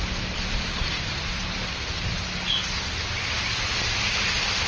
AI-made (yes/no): no